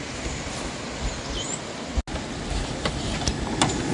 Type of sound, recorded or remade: recorded